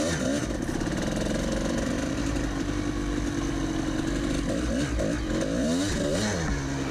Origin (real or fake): real